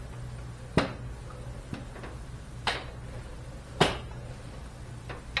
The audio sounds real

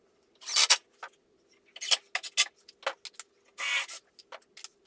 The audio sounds real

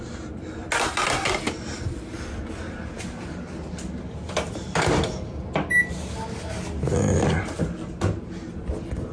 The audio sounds real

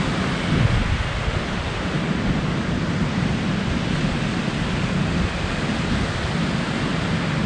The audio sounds real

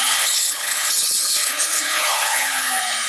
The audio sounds fake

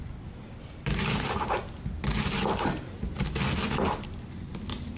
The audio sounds real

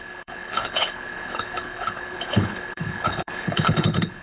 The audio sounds fake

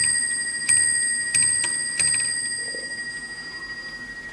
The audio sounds real